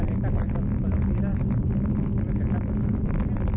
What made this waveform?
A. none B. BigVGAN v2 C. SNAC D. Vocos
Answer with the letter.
A